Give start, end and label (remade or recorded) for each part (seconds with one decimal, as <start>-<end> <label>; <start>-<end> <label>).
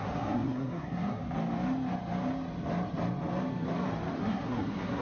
0.0-1.2 remade; 1.2-4.2 recorded; 4.2-5.0 remade